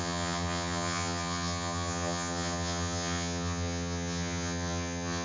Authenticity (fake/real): fake